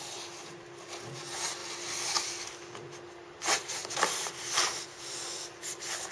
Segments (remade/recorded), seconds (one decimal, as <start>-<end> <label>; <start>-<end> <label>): 0.0-3.8 recorded; 3.8-5.0 remade; 5.0-6.1 recorded